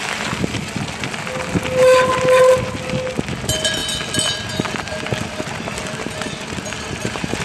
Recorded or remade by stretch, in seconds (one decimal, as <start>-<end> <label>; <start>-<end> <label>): 0.0-7.4 recorded